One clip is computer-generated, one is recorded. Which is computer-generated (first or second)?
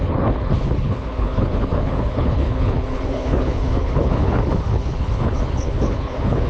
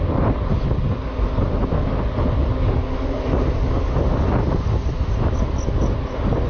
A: first